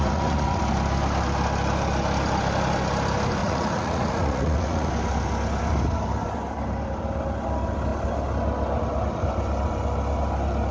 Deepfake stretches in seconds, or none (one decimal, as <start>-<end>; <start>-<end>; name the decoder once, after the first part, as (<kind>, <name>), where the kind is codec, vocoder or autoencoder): 0.0-0.6 (vocoder, Vocos); 3.4-4.9